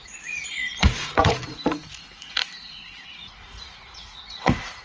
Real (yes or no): no